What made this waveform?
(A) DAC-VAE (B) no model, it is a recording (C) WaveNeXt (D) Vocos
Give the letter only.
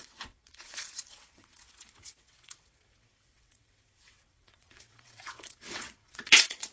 C